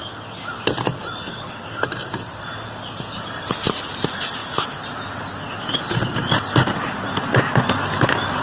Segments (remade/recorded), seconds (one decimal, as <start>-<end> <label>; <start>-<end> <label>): 0.0-1.3 recorded; 1.3-1.8 remade; 1.8-8.4 recorded